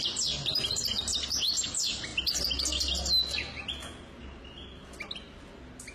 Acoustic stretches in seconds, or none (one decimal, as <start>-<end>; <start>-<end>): 2.1-5.9